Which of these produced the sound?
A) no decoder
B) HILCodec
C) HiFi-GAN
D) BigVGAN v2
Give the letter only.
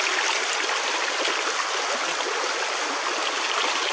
A